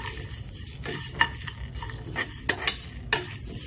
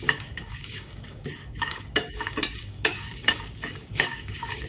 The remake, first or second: second